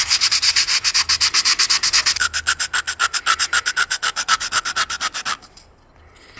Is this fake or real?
real